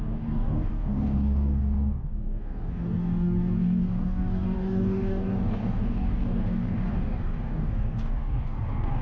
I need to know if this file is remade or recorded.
remade